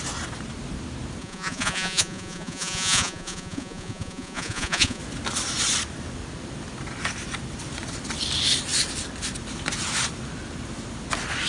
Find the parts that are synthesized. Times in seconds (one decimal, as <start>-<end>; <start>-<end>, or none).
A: 1.2-5.0

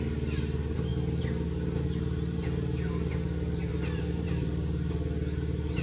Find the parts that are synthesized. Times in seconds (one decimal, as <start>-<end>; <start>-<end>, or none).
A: 3.6-4.5

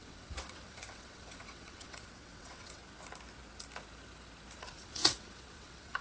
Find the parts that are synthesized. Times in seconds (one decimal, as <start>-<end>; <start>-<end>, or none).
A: 0.0-2.8; 4.6-6.0

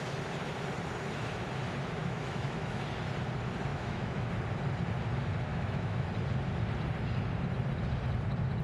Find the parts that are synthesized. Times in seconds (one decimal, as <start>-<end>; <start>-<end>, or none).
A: 2.0-2.8; 3.7-4.3; 5.5-6.1